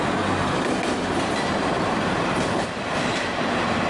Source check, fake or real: fake